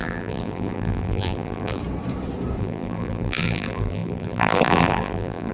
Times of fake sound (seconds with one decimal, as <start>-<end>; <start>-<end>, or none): 0.0-1.8; 2.6-5.5